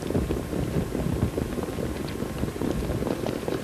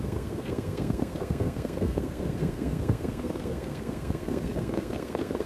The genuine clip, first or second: first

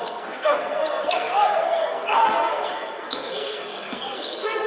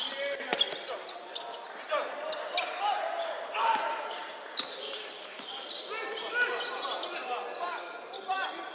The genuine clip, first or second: second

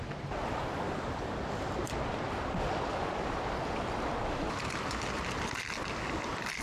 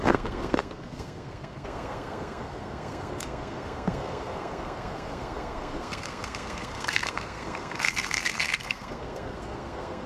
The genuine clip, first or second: first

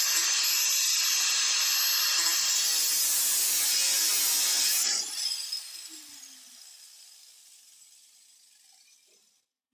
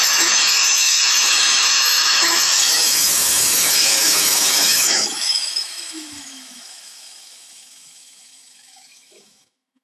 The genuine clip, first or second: first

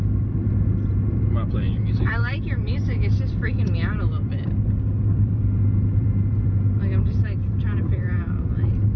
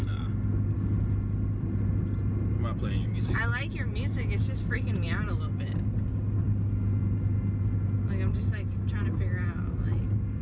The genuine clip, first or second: second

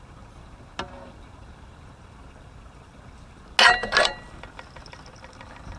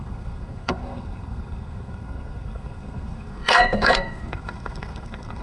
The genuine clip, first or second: first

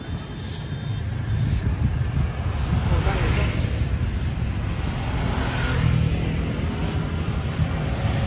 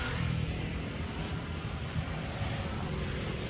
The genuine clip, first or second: first